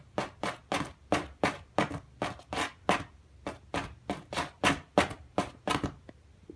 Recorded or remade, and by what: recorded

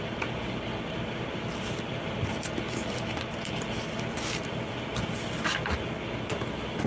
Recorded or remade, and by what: recorded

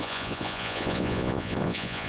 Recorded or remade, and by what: remade, vocoder, Vocos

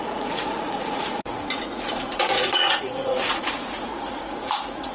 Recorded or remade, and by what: remade, vocoder, Vocos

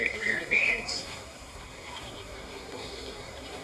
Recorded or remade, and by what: remade, codec, SNAC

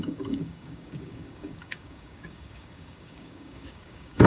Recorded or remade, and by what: remade, codec, DAC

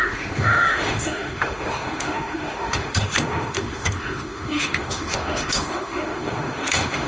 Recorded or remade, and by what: remade, autoencoder, DAC-VAE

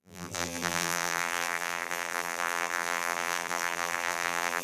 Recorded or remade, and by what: remade, vocoder, BigVGAN v2